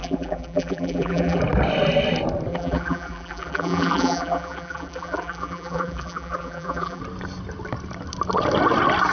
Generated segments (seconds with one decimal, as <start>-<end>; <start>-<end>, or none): 0.0-1.4; 2.5-7.0